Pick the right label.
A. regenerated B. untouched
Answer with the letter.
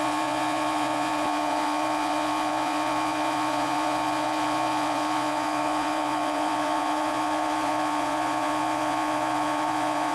A